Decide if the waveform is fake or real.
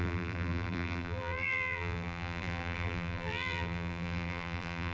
fake